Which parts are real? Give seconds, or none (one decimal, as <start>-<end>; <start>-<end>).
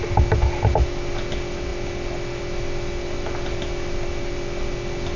0.0-5.2